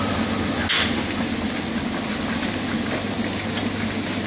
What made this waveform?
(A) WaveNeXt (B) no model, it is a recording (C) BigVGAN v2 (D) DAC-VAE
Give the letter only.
B